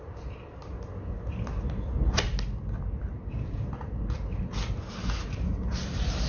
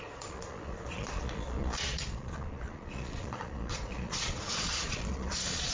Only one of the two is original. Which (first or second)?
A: first